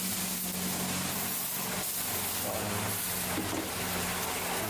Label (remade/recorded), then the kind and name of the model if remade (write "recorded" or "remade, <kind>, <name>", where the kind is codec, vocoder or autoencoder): recorded